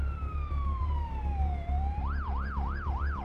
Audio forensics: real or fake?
fake